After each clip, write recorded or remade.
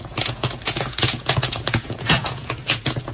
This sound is remade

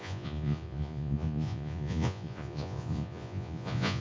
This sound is remade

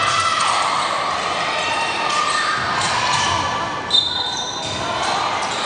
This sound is recorded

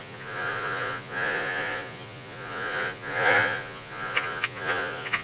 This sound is remade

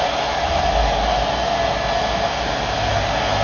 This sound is recorded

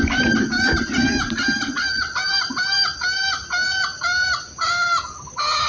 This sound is recorded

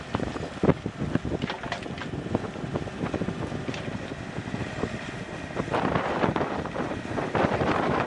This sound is recorded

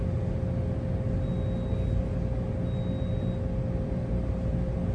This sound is recorded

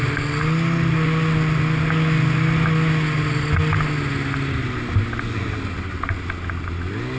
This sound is recorded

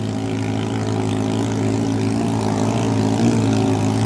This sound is recorded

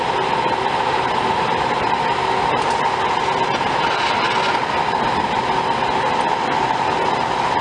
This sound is recorded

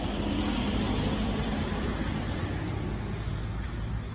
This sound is recorded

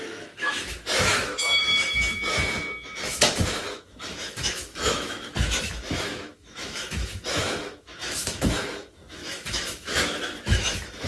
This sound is remade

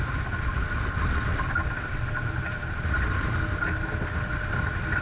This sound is recorded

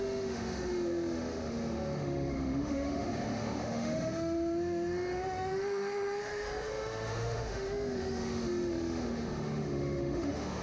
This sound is remade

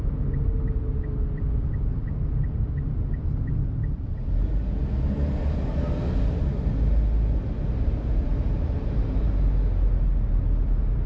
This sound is recorded